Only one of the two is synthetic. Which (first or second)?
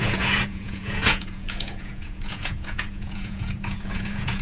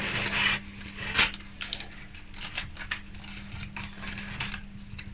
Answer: first